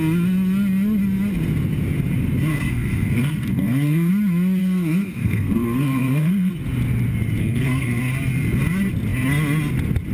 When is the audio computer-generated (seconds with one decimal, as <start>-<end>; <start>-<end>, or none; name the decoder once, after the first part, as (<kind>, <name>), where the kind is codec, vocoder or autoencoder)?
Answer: 2.5-4.1 (codec, SNAC); 4.6-6.5; 7.4-8.0